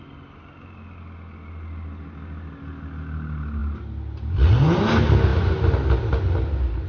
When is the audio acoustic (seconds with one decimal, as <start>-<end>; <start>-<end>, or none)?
0.0-6.9